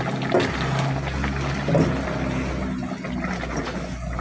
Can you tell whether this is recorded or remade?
recorded